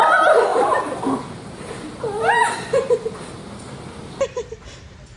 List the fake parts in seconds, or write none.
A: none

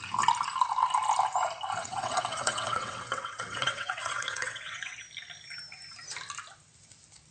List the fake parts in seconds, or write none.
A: 1.8-5.0 (vocoder, WaveNeXt)

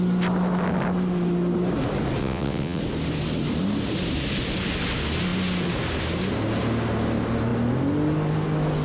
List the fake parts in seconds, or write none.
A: 2.2-2.8 (vocoder, WaveNeXt)

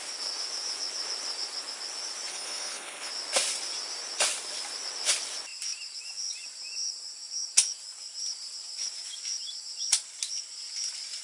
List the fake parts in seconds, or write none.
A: 2.3-3.1 (codec, HILCodec)

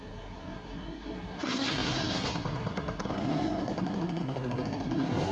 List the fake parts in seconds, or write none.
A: 0.0-5.3 (codec, SNAC)

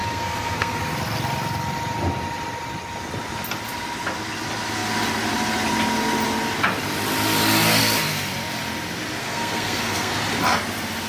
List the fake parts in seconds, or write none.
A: 0.0-0.8 (codec, SNAC); 9.2-10.1